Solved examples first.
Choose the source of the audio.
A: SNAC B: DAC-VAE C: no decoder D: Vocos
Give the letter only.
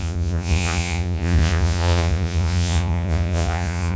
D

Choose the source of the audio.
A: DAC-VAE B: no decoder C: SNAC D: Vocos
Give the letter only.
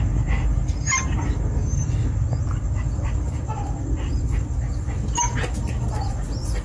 B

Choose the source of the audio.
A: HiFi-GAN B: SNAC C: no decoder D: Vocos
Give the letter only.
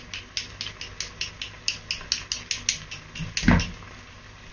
C